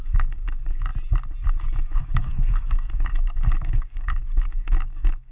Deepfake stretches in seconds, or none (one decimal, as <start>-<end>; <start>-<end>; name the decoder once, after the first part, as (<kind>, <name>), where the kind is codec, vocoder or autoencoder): 0.0-0.9 (codec, DAC); 2.0-5.3